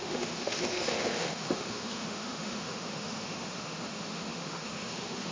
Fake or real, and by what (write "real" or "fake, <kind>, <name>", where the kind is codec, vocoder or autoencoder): fake, autoencoder, DAC-VAE